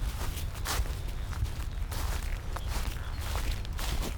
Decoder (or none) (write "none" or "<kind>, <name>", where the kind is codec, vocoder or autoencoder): none